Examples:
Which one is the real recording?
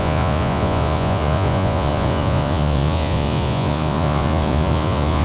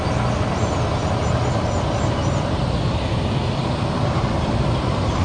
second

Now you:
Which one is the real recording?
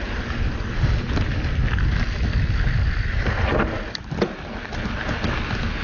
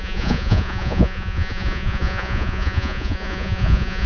first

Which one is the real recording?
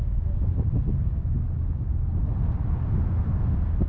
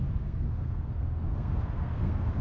first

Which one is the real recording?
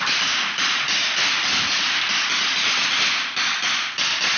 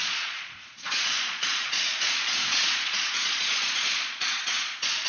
first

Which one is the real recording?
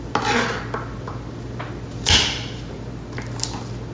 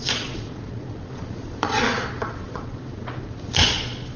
first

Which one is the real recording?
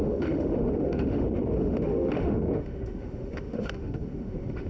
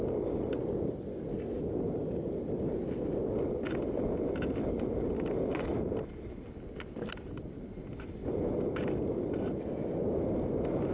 second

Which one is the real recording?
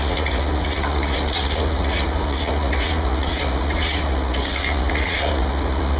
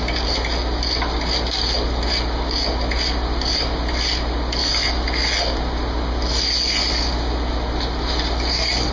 second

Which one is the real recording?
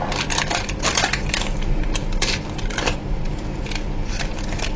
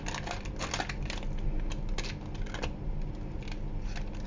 second